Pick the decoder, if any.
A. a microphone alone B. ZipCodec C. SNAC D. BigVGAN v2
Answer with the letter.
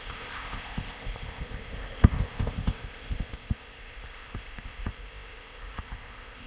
B